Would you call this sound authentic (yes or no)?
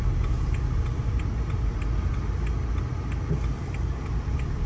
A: yes